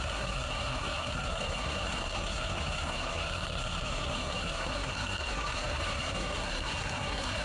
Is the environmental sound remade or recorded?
remade